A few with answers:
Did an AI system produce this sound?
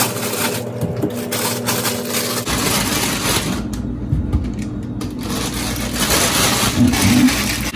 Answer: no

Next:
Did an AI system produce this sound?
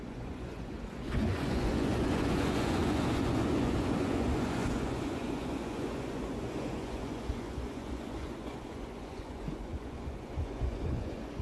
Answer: yes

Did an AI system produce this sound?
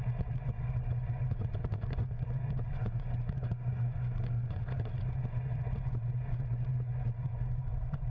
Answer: yes